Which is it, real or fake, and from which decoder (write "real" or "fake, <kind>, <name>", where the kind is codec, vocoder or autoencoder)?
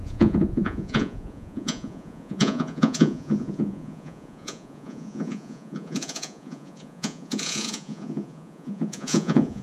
fake, vocoder, Vocos